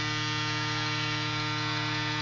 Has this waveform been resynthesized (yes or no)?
no